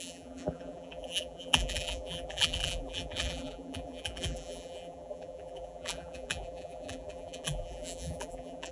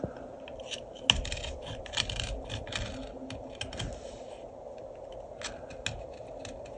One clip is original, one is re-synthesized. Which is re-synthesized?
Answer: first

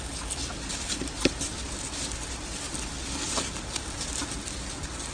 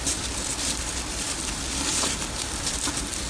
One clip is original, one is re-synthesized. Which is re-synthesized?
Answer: second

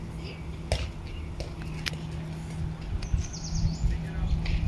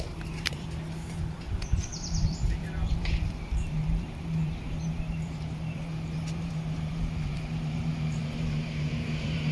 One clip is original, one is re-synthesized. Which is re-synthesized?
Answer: second